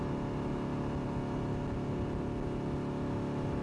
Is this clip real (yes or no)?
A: yes